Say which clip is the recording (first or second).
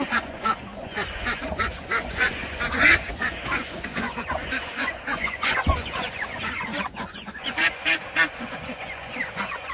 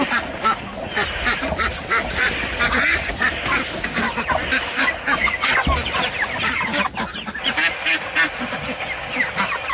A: second